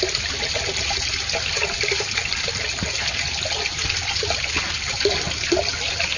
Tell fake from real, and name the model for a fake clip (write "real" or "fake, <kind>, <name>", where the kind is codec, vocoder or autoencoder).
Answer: real